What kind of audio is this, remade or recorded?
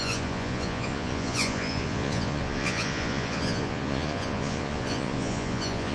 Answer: remade